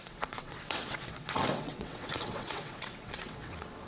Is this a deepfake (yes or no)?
yes